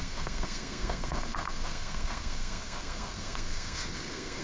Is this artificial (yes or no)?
yes